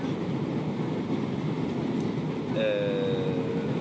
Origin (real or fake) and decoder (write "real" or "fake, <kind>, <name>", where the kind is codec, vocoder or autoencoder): real